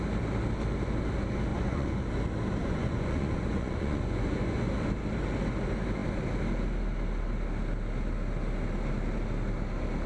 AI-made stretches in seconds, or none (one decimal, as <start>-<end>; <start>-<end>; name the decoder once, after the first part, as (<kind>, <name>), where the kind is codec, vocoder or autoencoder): 1.5-2.1 (vocoder, Vocos); 2.6-4.7